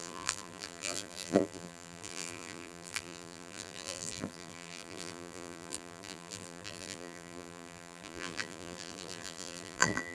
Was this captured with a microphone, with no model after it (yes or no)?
no